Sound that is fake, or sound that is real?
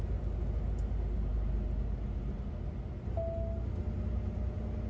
real